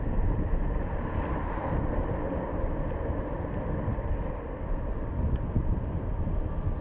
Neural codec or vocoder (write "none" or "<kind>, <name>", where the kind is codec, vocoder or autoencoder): none